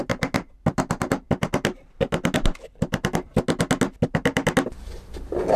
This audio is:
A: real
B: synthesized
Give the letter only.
A